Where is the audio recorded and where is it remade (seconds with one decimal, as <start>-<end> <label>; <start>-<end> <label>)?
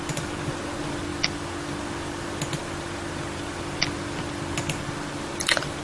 0.0-5.8 recorded